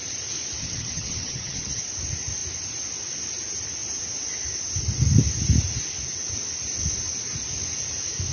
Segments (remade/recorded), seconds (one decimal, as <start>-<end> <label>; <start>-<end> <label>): 0.0-0.6 recorded; 0.6-1.8 remade; 1.8-8.3 recorded

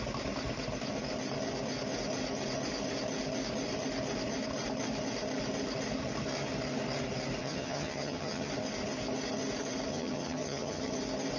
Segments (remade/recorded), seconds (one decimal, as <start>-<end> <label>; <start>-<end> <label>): 0.0-7.4 recorded; 7.4-8.5 remade; 8.5-9.9 recorded; 9.9-10.9 remade; 10.9-11.4 recorded

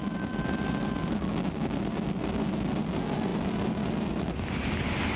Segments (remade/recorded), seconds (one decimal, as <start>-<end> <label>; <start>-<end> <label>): 0.0-5.2 recorded

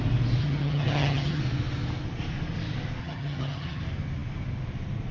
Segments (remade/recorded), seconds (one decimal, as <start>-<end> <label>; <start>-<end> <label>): 0.0-0.4 recorded; 0.4-1.4 remade; 1.4-3.0 recorded; 3.0-3.8 remade; 3.8-5.1 recorded

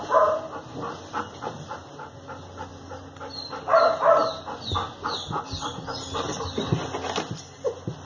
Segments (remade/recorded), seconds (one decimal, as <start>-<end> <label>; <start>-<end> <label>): 0.0-8.1 recorded